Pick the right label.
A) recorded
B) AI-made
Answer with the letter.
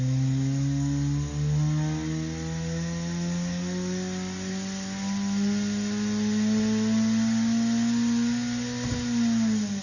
A